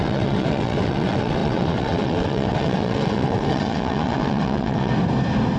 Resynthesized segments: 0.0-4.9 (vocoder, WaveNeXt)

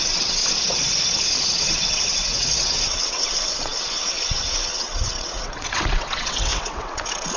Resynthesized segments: 0.0-0.4 (vocoder, WaveNeXt); 1.6-7.4

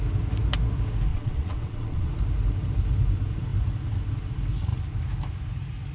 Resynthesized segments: 1.1-2.1 (vocoder, WaveNeXt)

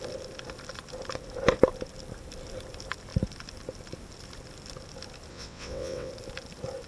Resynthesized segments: 5.3-6.1 (vocoder, WaveNeXt)